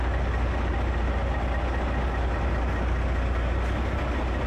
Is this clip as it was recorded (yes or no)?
yes